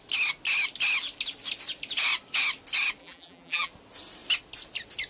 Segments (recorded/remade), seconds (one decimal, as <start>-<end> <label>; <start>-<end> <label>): 0.0-3.0 recorded; 3.0-3.7 remade; 3.7-5.1 recorded